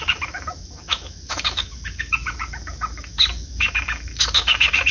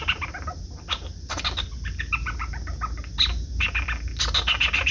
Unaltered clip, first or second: second